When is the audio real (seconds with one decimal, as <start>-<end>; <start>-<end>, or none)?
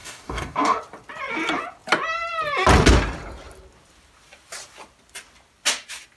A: 0.8-6.2